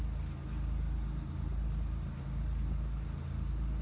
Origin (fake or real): real